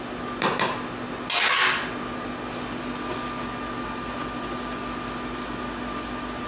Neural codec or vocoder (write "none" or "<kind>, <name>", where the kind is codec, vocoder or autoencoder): none